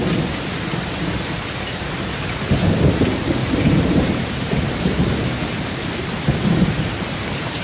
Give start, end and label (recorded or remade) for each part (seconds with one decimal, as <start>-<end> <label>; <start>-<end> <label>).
0.0-1.8 recorded; 1.8-7.6 remade